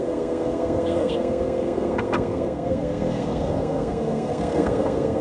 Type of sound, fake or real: fake